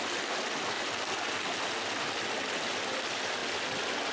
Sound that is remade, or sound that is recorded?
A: recorded